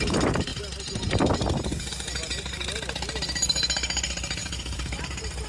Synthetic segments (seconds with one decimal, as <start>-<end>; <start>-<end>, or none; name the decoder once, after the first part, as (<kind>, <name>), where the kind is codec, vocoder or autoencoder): 4.4-5.0 (codec, DAC)